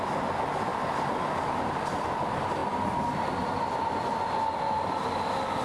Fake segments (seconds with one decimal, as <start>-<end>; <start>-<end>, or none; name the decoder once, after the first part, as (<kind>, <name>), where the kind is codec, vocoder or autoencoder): none